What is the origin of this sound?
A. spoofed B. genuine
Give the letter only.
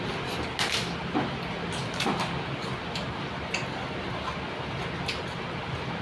B